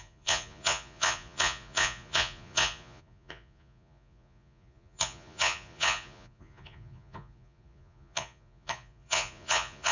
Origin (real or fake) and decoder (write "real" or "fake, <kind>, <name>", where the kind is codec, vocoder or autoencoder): fake, vocoder, Vocos